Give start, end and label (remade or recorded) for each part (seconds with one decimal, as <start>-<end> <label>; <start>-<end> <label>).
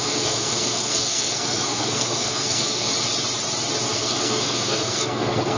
0.0-2.9 remade; 2.9-3.9 recorded; 3.9-5.6 remade